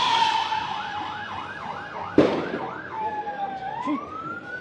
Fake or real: fake